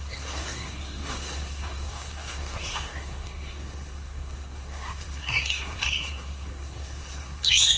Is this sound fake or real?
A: fake